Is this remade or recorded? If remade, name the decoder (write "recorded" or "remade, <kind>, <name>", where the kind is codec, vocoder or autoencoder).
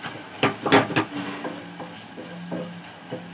recorded